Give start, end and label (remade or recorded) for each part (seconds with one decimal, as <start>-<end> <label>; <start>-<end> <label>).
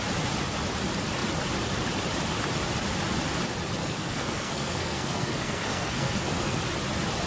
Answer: 0.0-3.8 recorded; 3.8-6.6 remade; 6.6-7.3 recorded